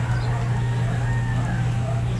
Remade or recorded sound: recorded